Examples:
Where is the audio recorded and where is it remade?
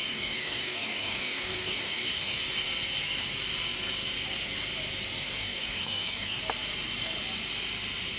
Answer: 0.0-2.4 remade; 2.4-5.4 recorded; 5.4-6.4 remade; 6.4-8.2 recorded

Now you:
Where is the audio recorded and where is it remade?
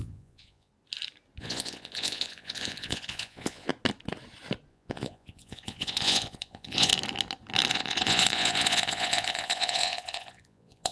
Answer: 0.0-0.7 remade; 0.7-1.4 recorded; 1.4-3.7 remade; 3.7-4.7 recorded; 4.7-6.9 remade; 6.9-7.7 recorded; 7.7-10.9 remade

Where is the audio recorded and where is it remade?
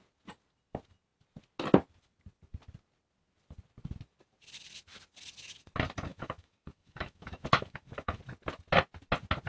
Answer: 0.0-6.1 recorded; 6.1-8.2 remade; 8.2-9.5 recorded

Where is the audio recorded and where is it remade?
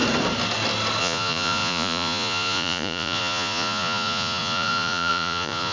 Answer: 0.0-1.0 recorded; 1.0-5.7 remade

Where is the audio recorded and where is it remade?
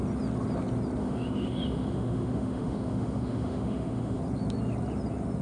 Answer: 0.0-1.0 recorded; 1.0-4.2 remade; 4.2-5.4 recorded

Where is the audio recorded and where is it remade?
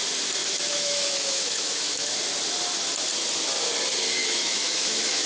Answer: 0.0-0.4 recorded; 0.4-2.1 remade; 2.1-4.2 recorded; 4.2-5.3 remade